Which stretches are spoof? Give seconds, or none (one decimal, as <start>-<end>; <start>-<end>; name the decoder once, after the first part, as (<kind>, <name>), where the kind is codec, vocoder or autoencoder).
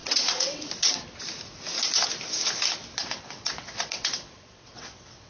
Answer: 0.0-0.6 (vocoder, WaveNeXt); 3.0-5.3